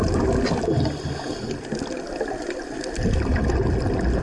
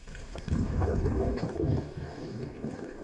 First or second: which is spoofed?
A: second